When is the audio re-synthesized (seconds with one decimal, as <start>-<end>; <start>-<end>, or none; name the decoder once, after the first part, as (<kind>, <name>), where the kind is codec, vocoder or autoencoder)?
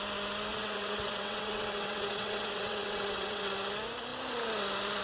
0.5-3.5 (vocoder, WaveNeXt)